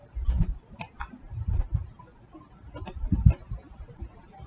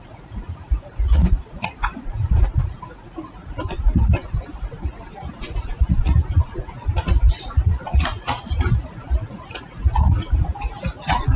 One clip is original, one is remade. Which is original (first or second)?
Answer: first